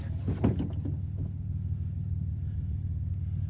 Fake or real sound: real